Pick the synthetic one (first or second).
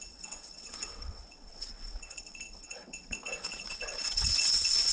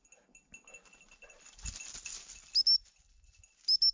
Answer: first